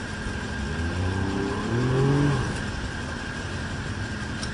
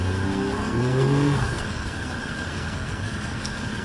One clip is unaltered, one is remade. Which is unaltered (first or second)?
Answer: first